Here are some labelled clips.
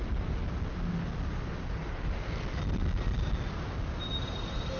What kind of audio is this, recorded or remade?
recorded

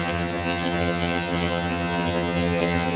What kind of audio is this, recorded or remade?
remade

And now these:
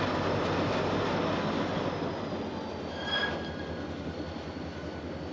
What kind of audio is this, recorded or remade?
recorded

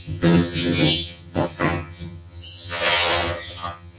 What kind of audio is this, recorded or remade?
remade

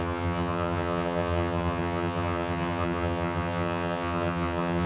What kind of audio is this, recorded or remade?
remade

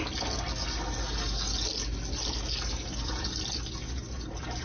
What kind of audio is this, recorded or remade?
recorded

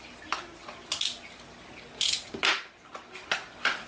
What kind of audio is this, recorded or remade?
recorded